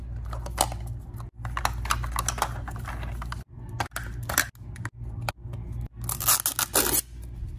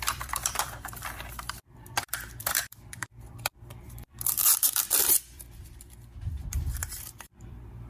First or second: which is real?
first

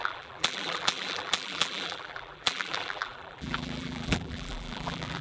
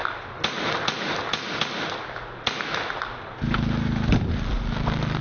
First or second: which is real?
second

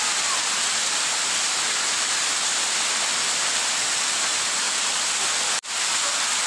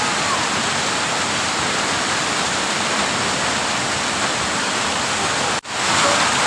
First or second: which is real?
first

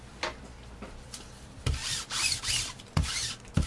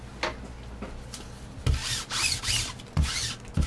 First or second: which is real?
second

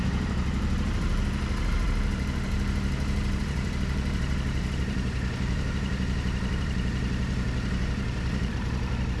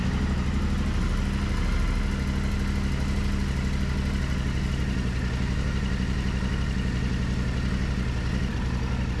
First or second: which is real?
second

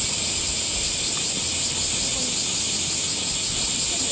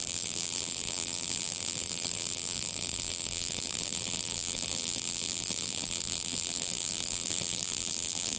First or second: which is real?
first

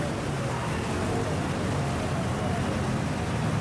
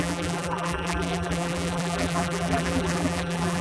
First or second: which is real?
first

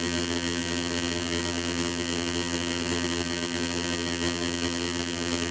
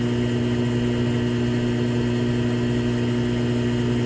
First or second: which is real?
second